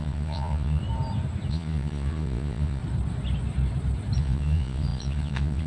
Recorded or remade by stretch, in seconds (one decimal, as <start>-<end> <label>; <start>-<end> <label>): 0.0-0.8 remade; 0.8-1.5 recorded; 1.5-2.8 remade; 2.8-4.2 recorded; 4.2-5.7 remade